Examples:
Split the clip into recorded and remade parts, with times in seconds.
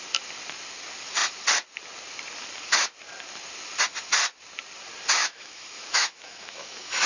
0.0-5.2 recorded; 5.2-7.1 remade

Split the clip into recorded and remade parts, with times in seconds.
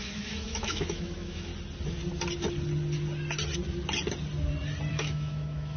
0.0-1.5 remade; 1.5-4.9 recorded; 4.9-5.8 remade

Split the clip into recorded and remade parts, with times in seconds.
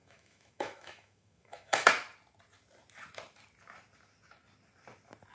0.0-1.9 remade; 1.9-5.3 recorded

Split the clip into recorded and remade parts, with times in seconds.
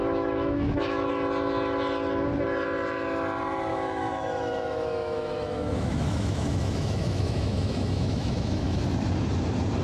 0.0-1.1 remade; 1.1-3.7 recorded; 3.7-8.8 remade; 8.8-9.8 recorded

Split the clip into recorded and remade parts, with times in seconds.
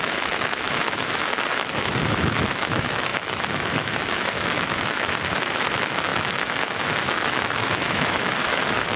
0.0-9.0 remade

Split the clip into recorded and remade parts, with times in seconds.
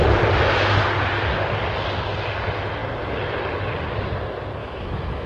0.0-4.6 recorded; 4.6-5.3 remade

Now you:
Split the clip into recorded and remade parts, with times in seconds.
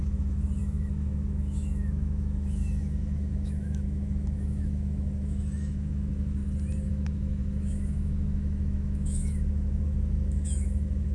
0.0-6.4 remade; 6.4-6.9 recorded; 6.9-11.1 remade